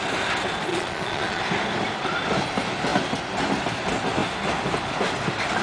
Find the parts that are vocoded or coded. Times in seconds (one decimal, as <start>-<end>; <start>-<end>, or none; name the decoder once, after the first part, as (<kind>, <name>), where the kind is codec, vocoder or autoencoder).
0.7-1.4 (vocoder, Vocos)